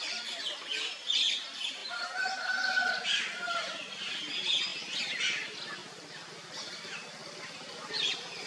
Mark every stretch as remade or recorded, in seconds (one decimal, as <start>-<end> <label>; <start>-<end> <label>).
0.0-1.8 recorded; 1.8-2.5 remade; 2.5-5.8 recorded; 5.8-6.3 remade; 6.3-7.2 recorded; 7.2-8.5 remade